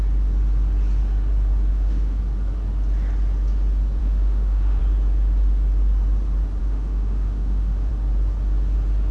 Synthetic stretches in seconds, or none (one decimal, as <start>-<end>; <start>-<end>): 1.7-2.2; 4.0-4.8; 6.6-7.9